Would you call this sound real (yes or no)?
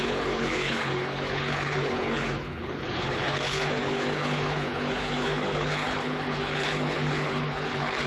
no